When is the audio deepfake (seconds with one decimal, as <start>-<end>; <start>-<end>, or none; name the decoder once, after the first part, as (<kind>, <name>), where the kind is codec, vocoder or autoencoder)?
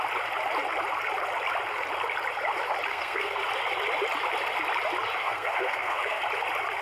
2.9-3.4 (codec, SNAC); 5.2-6.2